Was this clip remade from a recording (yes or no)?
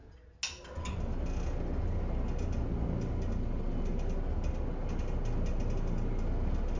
no